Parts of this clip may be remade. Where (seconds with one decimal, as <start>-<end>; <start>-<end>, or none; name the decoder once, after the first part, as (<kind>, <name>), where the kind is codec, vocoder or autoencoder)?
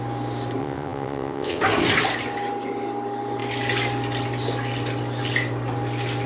0.6-1.6 (vocoder, WaveNeXt)